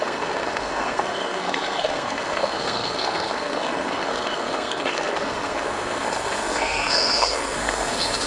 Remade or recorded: remade